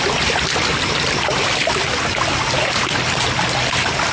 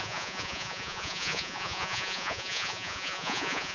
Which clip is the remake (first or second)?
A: second